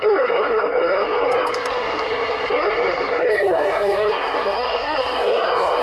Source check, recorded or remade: remade